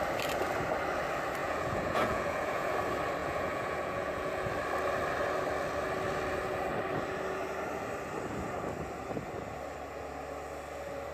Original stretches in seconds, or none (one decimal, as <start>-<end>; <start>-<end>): 0.0-1.4; 2.7-3.2; 4.5-11.1